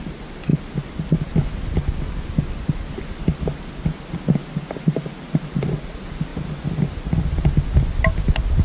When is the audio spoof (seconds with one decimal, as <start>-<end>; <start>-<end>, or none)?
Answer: none